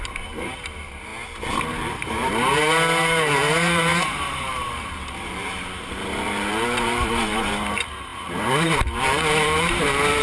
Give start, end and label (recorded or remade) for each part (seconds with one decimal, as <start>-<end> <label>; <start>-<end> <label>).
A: 0.0-1.1 remade; 1.1-1.6 recorded; 1.6-10.2 remade